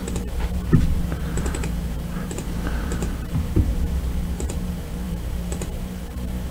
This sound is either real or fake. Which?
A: fake